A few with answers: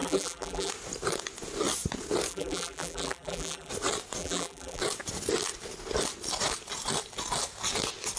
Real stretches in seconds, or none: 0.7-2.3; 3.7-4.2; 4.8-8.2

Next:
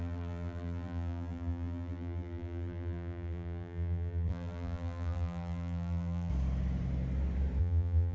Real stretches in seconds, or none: 6.3-7.6

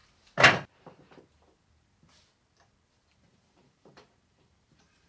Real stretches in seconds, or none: 0.0-3.1

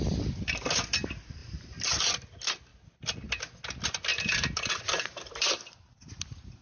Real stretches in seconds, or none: 0.0-1.4; 2.1-2.7; 3.3-4.1

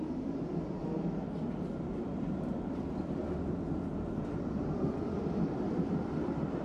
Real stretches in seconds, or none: 0.8-1.5

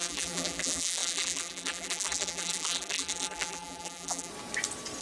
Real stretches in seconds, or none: 4.3-5.0

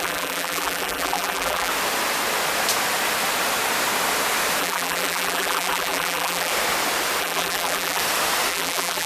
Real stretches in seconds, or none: 1.7-4.6; 6.5-7.2; 8.0-8.5

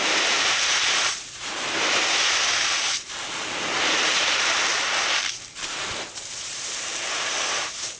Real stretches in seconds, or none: 4.7-5.5